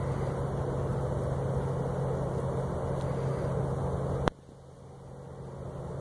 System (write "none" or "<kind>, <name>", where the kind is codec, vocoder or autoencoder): none